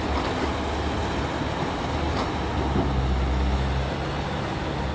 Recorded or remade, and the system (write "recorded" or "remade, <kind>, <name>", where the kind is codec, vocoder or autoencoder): recorded